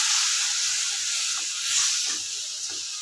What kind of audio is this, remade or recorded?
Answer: recorded